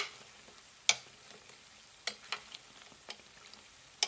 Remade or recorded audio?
recorded